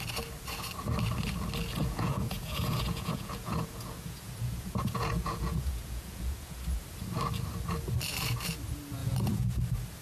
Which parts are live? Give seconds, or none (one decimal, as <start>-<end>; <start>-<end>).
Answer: 0.0-1.8; 6.8-9.0; 9.6-10.0